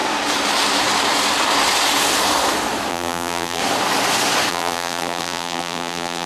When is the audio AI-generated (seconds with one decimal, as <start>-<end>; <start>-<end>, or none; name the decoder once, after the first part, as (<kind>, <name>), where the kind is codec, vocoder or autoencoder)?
2.9-3.6 (vocoder, BigVGAN v2); 4.5-6.3